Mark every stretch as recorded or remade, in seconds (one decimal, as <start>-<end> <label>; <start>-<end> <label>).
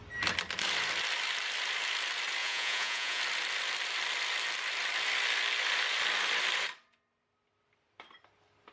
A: 0.0-2.4 recorded; 2.4-3.2 remade; 3.2-8.7 recorded